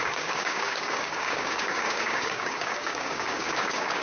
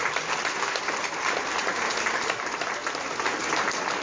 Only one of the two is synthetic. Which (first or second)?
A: first